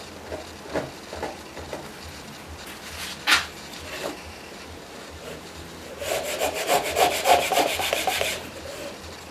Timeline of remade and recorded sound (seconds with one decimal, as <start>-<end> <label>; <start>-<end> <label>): 0.0-4.0 recorded; 4.0-8.7 remade; 8.7-9.3 recorded